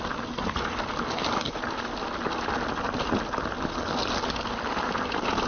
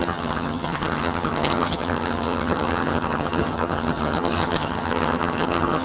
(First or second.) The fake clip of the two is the second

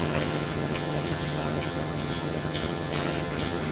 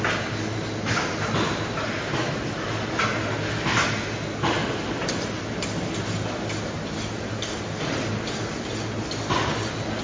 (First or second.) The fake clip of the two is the first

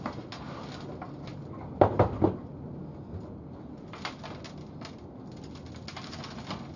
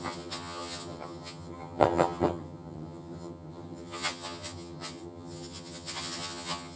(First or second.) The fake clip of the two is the second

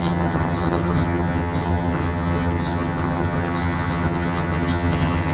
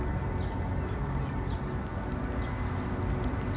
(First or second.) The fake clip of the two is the first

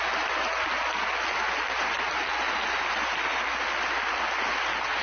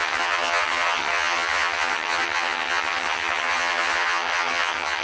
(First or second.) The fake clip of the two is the second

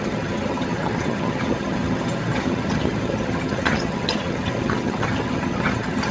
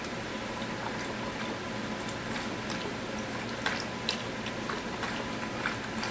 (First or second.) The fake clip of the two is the first